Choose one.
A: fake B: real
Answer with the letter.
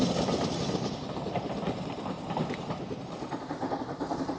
B